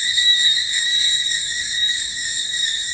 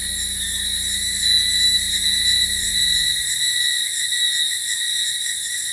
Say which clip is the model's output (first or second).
first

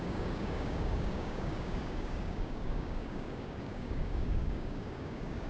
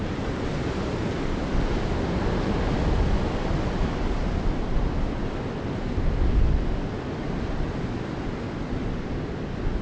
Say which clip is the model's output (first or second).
first